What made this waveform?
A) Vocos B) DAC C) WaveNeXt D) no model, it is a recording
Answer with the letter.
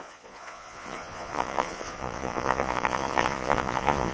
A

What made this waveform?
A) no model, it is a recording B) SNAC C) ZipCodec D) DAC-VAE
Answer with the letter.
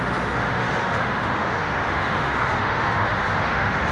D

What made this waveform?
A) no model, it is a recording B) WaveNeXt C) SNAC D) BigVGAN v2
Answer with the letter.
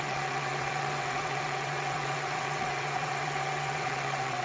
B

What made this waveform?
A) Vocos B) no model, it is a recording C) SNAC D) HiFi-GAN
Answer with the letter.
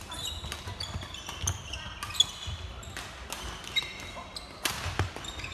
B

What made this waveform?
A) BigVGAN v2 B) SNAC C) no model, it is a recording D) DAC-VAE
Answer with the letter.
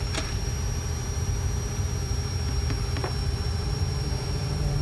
A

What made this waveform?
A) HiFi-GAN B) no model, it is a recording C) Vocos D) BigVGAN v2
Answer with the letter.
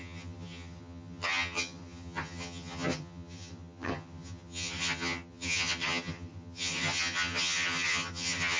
A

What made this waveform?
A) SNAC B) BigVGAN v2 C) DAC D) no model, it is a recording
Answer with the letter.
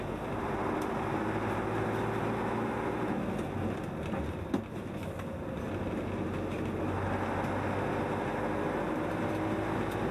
D